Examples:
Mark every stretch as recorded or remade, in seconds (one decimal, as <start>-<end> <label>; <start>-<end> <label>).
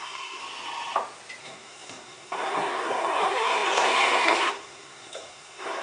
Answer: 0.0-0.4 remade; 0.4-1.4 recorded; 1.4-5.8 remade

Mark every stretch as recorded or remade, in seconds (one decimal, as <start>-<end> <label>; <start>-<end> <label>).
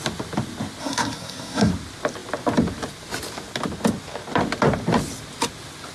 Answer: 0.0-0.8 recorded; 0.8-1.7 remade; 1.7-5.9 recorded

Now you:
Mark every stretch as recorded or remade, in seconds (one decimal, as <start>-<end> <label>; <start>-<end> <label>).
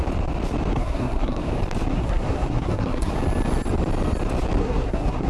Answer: 0.0-0.7 recorded; 0.7-1.5 remade; 1.5-1.9 recorded; 1.9-3.1 remade; 3.1-4.6 recorded; 4.6-5.3 remade